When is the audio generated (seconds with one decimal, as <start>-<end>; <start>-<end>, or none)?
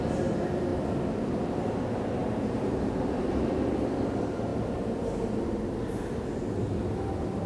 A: 2.2-3.0